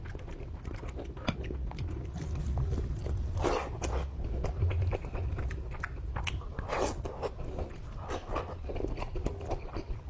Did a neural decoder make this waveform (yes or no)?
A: no